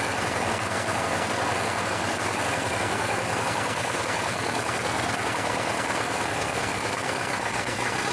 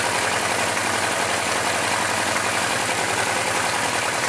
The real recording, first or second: second